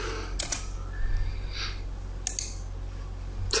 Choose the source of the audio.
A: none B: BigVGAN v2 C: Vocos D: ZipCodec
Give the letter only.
A